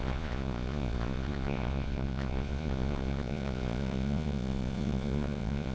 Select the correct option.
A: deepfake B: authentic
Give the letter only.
A